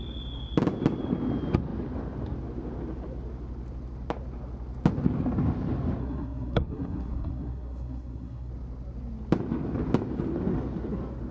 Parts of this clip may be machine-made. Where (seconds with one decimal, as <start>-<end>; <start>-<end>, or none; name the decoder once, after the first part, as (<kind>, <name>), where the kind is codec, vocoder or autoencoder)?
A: 6.0-8.5 (codec, SNAC)